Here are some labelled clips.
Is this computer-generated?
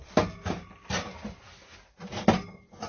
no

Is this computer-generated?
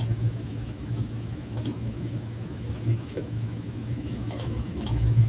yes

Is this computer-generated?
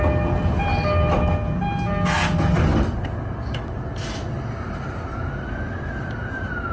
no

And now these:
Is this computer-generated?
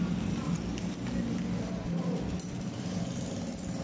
no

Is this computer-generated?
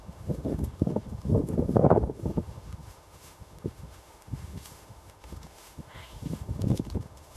yes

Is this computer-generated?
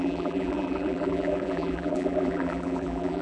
yes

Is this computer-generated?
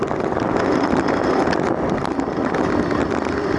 no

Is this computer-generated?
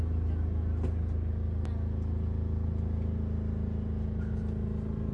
no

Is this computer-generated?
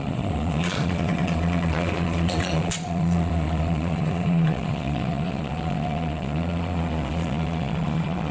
yes